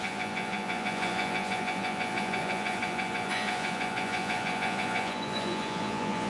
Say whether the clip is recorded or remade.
remade